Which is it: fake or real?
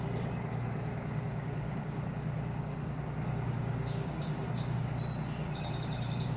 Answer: fake